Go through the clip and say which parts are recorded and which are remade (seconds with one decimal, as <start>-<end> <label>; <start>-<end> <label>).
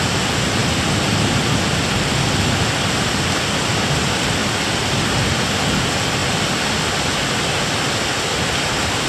0.0-9.1 recorded